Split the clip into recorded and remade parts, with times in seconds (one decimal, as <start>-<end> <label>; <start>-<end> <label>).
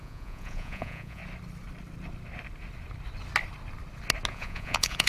0.0-1.2 remade; 1.2-4.3 recorded; 4.3-5.1 remade